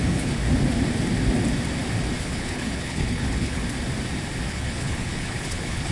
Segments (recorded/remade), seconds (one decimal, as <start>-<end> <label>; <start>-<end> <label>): 0.0-0.4 remade; 0.4-2.2 recorded; 2.2-3.6 remade; 3.6-4.5 recorded; 4.5-5.9 remade